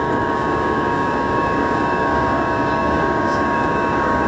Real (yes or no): no